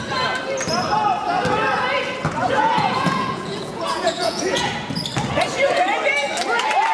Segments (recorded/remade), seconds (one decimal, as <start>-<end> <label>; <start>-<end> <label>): 0.0-2.4 recorded; 2.4-4.7 remade; 4.7-6.9 recorded